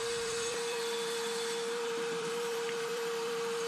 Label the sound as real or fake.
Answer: fake